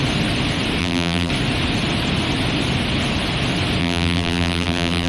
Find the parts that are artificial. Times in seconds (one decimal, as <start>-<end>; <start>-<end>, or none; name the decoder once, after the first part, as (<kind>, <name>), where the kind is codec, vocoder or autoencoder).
0.8-1.3 (vocoder, BigVGAN v2); 3.8-5.1